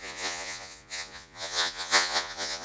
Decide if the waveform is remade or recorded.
remade